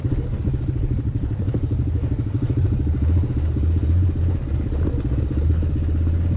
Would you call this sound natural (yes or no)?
yes